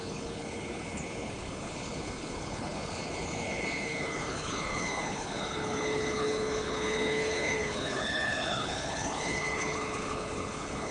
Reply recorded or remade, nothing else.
remade